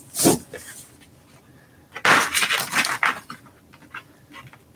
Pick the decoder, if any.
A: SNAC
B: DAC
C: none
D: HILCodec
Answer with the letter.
C